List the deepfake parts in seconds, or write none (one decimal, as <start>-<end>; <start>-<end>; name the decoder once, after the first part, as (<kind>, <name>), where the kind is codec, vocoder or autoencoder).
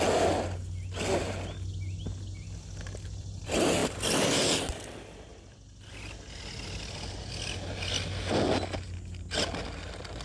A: none